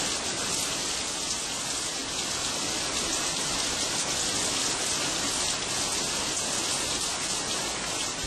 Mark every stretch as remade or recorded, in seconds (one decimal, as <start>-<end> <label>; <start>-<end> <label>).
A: 0.0-8.3 recorded

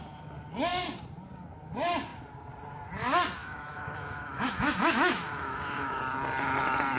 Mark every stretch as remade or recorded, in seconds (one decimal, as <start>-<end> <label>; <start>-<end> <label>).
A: 0.0-3.4 recorded; 3.4-6.0 remade; 6.0-7.0 recorded

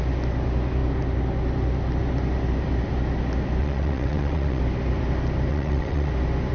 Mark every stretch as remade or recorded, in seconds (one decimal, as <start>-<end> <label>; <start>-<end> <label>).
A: 0.0-3.6 recorded; 3.6-4.6 remade; 4.6-5.5 recorded; 5.5-6.1 remade; 6.1-6.5 recorded

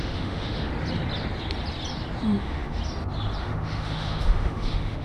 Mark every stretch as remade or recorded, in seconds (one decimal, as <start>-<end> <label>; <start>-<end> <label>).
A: 0.0-0.7 remade; 0.7-2.4 recorded; 2.4-2.8 remade; 2.8-3.4 recorded; 3.4-5.0 remade

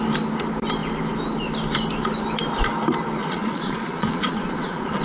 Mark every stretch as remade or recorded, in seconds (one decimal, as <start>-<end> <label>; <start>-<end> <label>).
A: 0.0-3.2 recorded; 3.2-5.0 remade

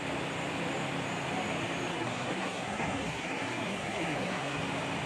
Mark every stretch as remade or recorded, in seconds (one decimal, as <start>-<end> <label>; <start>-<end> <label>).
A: 0.0-1.9 recorded; 1.9-4.6 remade; 4.6-5.1 recorded

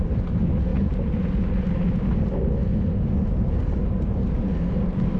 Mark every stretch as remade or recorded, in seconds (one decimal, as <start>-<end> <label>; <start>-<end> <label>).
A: 0.0-5.2 recorded